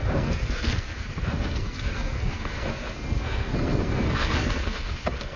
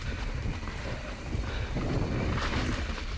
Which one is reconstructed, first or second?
first